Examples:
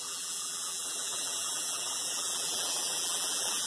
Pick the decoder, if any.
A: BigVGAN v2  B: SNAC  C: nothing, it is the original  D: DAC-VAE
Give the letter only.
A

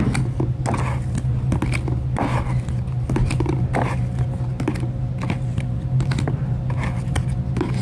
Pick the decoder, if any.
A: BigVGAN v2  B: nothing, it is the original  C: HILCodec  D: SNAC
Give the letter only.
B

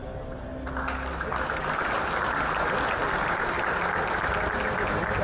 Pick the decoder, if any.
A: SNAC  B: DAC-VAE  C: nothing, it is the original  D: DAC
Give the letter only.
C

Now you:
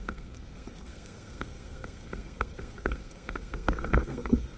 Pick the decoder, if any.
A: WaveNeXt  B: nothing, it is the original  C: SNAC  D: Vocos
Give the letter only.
C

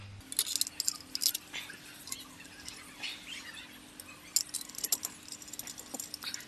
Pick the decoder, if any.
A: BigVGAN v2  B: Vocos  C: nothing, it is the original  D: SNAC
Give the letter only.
C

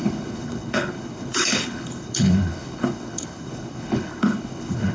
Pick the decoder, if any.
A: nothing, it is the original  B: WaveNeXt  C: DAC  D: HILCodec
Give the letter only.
D